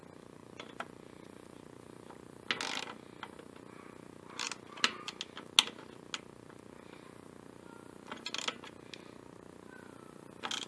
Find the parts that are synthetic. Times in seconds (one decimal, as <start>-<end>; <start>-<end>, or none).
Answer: none